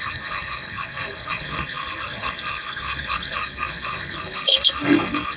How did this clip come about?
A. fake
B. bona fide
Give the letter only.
A